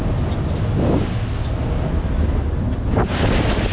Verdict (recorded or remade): recorded